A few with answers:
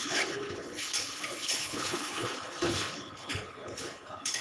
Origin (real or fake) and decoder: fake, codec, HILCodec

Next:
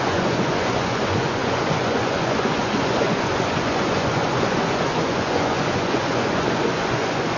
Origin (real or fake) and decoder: fake, vocoder, Vocos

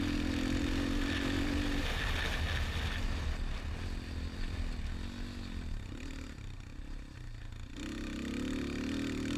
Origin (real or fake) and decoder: real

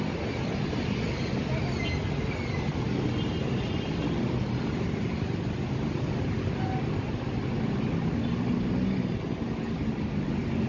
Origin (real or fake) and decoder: real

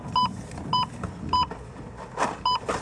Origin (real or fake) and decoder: real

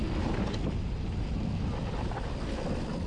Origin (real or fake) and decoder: real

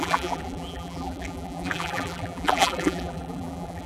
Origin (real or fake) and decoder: fake, vocoder, BigVGAN v2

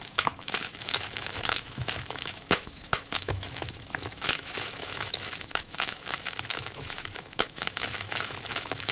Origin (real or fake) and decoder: fake, autoencoder, DAC-VAE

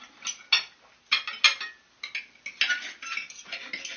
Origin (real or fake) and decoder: real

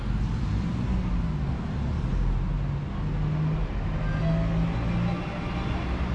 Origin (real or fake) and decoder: real